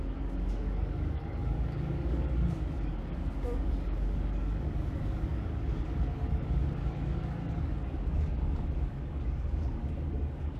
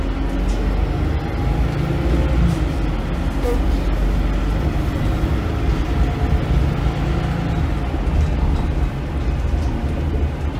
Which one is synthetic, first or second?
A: first